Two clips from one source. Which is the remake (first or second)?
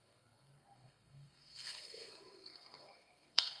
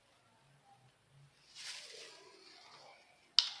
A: first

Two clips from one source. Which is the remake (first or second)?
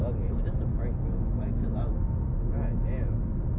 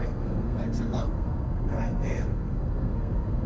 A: second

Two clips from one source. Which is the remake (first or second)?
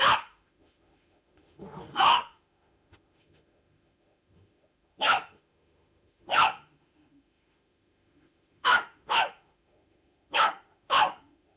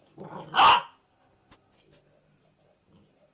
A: first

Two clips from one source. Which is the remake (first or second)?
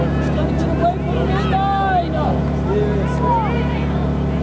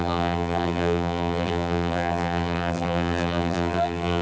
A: second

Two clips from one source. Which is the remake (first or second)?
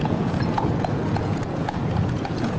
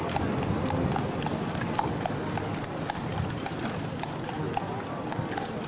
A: first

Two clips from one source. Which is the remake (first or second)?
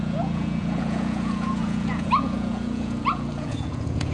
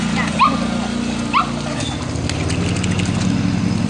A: first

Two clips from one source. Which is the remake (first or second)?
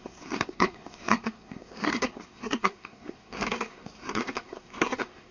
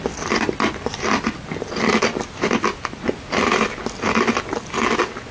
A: first